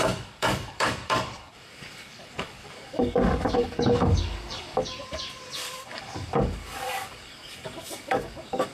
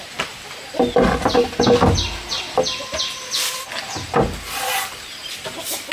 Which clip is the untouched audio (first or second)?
second